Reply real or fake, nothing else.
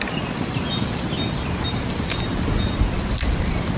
real